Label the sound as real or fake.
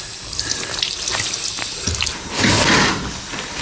real